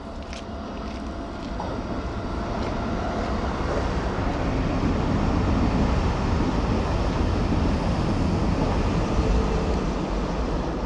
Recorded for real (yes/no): yes